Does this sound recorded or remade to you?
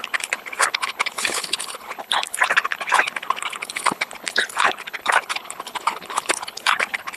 remade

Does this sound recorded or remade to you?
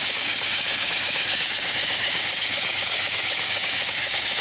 remade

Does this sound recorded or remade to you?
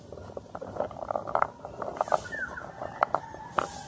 recorded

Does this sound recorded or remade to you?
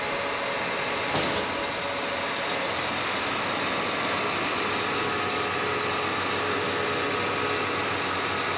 recorded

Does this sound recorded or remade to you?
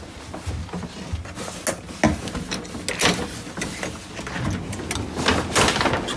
recorded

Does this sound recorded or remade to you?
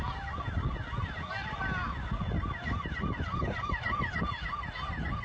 recorded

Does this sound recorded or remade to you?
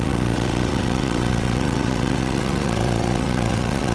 remade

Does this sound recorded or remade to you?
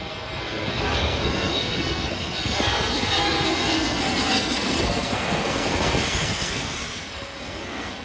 remade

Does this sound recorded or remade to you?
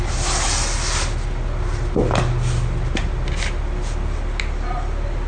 recorded